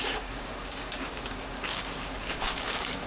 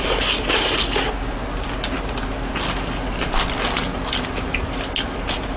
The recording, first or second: second